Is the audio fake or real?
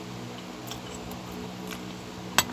real